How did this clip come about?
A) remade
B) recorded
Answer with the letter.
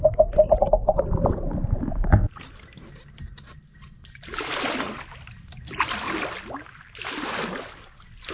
B